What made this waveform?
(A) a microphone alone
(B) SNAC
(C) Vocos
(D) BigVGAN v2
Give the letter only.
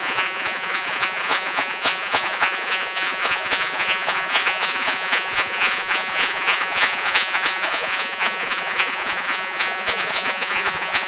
C